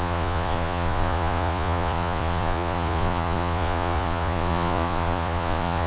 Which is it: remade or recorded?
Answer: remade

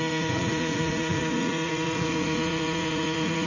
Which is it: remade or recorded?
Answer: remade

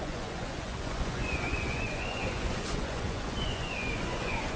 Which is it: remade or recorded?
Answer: remade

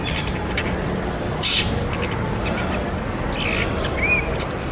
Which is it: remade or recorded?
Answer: recorded